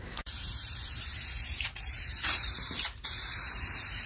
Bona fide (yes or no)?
no